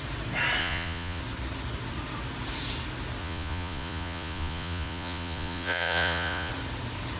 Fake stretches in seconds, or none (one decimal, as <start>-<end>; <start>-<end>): 0.6-1.2; 3.2-6.5